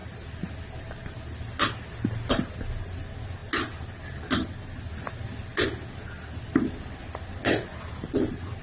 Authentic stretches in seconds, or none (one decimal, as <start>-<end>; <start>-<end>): 0.0-8.6